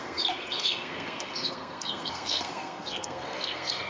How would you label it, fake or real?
fake